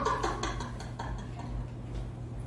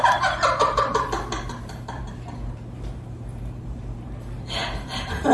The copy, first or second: second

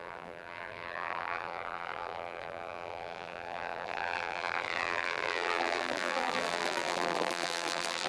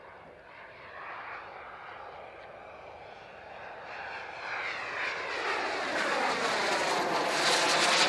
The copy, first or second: first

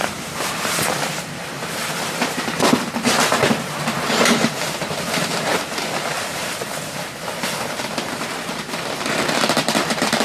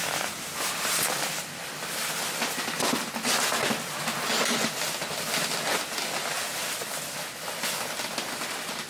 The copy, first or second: first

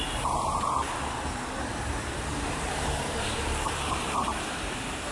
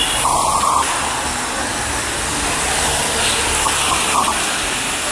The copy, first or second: first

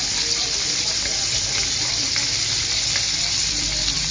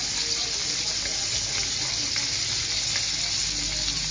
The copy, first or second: first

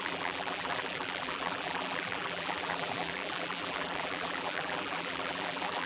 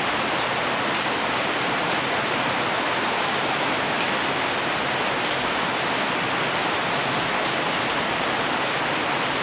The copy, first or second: first